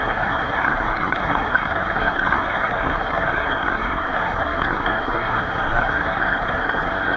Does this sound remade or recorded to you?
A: remade